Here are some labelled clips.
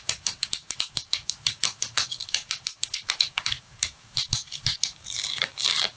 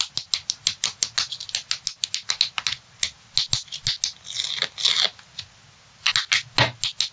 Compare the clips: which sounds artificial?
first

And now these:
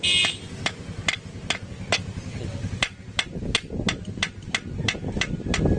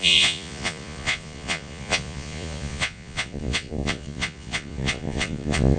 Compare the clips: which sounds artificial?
second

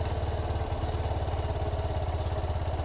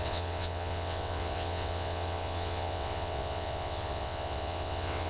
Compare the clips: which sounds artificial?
second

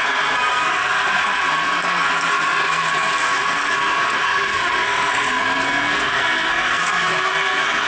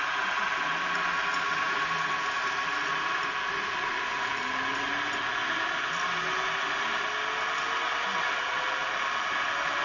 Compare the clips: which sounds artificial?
first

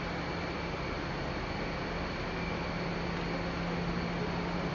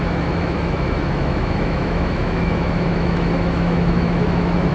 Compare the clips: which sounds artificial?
second